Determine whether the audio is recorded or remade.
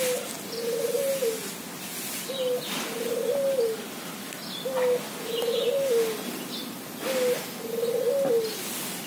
recorded